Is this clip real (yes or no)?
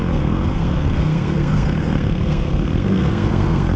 no